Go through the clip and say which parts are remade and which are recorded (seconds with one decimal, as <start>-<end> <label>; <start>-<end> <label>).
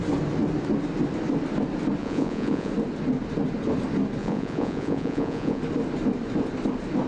0.0-2.0 recorded; 2.0-2.7 remade; 2.7-4.2 recorded; 4.2-5.6 remade; 5.6-7.1 recorded